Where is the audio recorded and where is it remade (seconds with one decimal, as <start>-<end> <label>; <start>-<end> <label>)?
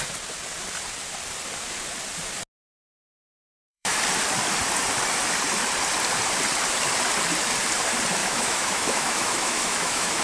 0.0-3.4 recorded; 3.4-4.0 remade; 4.0-8.2 recorded; 8.2-10.2 remade